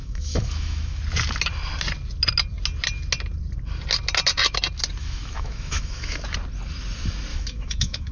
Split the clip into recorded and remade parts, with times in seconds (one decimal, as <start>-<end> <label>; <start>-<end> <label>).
0.0-1.0 remade; 1.0-5.0 recorded; 5.0-6.2 remade; 6.2-7.3 recorded; 7.3-8.1 remade

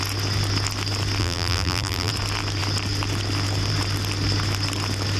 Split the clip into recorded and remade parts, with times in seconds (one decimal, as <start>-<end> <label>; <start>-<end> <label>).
0.0-1.2 recorded; 1.2-2.1 remade; 2.1-5.2 recorded

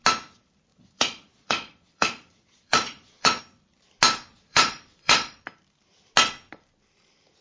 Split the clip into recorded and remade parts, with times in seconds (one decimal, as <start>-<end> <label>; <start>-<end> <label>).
0.0-0.7 recorded; 0.7-3.4 remade; 3.4-4.3 recorded; 4.3-5.4 remade; 5.4-7.4 recorded